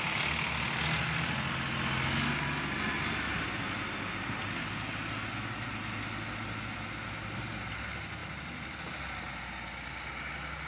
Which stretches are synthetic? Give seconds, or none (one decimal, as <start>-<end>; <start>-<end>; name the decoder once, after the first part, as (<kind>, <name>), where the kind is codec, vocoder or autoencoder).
8.2-8.9 (vocoder, BigVGAN v2)